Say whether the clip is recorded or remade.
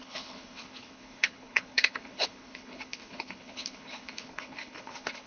remade